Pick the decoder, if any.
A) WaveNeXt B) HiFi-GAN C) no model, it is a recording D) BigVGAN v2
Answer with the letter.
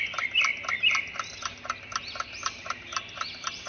C